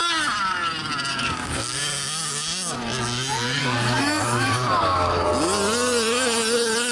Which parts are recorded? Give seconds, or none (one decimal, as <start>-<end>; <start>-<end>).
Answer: 0.0-1.1; 1.8-3.6; 5.3-6.9